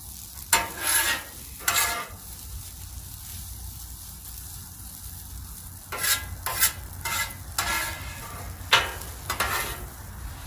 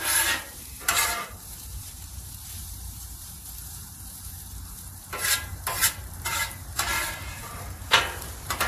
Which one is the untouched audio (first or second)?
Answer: first